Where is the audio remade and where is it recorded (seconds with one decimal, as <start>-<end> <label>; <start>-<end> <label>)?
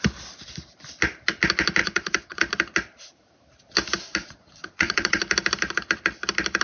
0.0-1.8 recorded; 1.8-2.4 remade; 2.4-4.2 recorded; 4.2-5.2 remade; 5.2-6.6 recorded